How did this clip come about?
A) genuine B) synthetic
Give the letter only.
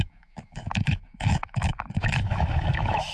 B